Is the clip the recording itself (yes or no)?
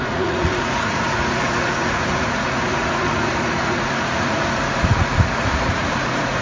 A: no